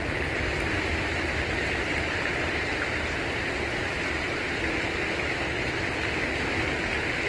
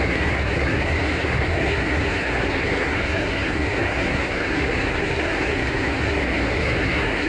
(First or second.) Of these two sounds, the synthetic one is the second